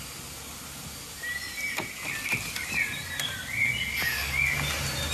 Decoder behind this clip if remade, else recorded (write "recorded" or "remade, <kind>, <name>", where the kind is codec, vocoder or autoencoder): recorded